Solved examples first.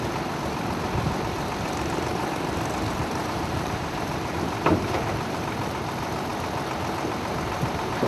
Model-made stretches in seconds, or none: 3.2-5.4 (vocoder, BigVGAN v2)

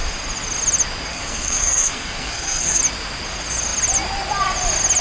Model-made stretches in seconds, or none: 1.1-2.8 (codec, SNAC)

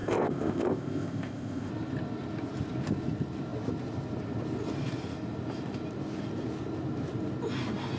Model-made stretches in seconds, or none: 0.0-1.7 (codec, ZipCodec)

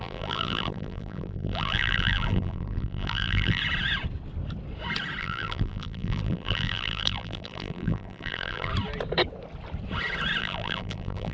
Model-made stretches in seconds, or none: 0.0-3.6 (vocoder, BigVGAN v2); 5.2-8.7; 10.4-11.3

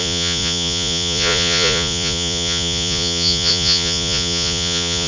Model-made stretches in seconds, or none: 0.0-5.1 (vocoder, Vocos)